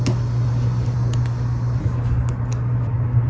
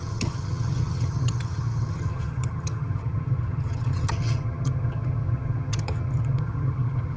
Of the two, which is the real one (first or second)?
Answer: first